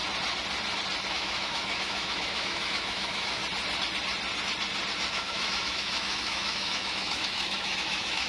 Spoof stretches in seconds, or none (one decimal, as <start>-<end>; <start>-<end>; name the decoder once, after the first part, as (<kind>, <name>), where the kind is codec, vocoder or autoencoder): 1.1-3.4 (autoencoder, DAC-VAE); 5.1-8.3